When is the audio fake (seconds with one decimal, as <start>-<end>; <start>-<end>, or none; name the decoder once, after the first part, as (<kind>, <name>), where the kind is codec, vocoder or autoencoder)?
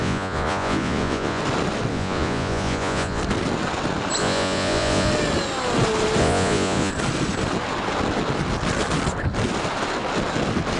0.0-1.4 (vocoder, Vocos); 1.9-3.2; 4.2-5.1; 6.2-6.9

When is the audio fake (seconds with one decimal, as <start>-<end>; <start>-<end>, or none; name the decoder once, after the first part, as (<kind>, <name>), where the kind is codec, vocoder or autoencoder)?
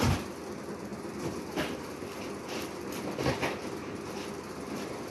none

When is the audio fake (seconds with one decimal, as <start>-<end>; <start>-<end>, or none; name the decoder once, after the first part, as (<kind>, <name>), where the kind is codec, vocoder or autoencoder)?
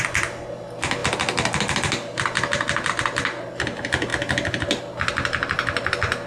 none